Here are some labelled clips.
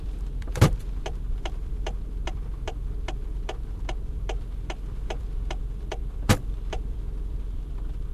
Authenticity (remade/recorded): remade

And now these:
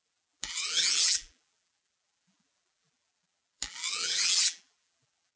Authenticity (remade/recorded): remade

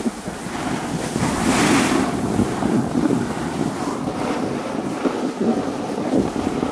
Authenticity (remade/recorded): recorded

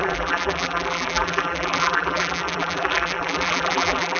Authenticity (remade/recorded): remade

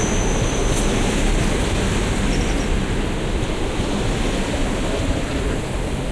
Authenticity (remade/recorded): recorded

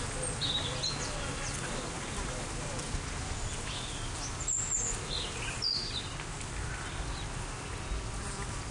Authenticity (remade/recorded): recorded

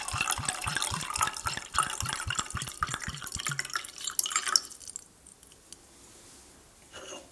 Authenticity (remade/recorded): recorded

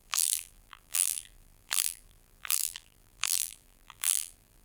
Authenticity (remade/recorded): remade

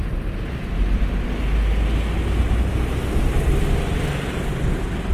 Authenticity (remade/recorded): recorded